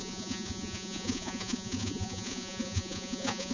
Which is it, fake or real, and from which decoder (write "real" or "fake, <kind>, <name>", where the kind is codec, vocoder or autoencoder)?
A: fake, vocoder, Vocos